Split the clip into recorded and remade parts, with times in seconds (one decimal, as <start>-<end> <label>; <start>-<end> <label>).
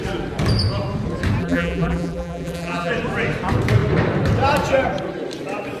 0.0-1.4 recorded; 1.4-2.9 remade; 2.9-5.8 recorded